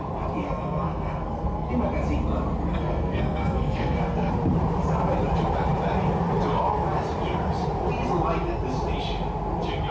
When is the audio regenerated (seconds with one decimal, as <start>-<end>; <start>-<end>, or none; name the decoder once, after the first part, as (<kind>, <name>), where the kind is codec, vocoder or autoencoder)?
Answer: 0.4-1.7 (codec, SNAC); 2.7-4.3